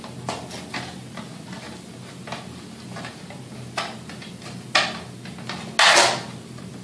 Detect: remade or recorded recorded